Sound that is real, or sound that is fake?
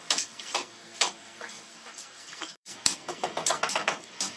fake